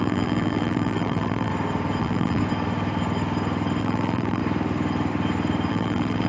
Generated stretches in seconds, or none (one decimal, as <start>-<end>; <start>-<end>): 0.0-1.5; 2.0-2.4; 3.8-4.4; 5.7-6.3